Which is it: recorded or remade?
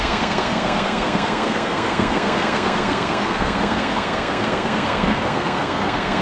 remade